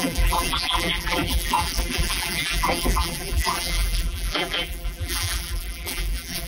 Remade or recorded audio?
remade